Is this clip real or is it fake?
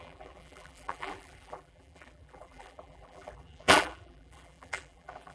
fake